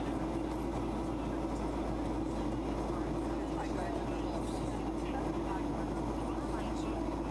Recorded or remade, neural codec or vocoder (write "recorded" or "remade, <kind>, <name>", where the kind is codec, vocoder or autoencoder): recorded